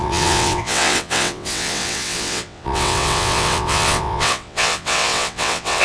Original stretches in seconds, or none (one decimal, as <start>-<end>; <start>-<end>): none